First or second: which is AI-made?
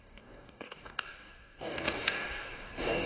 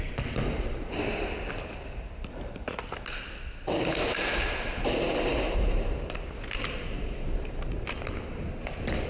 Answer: first